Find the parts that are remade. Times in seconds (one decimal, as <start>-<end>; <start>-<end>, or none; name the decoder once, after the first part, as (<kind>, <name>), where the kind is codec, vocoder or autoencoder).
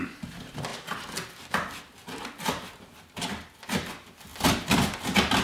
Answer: none